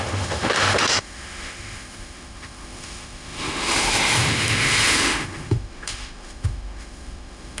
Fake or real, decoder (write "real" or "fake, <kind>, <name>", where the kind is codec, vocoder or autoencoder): fake, autoencoder, DAC-VAE